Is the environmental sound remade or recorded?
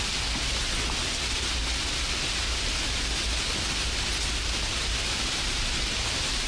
recorded